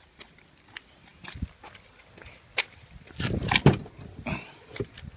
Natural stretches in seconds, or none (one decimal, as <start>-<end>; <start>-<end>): 0.0-5.2